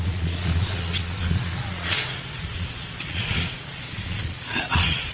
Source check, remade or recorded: remade